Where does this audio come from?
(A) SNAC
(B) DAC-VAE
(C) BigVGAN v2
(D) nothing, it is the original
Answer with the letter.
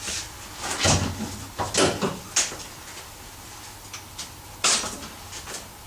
D